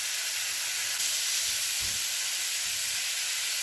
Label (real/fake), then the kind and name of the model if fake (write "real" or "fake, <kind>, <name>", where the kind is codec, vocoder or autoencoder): real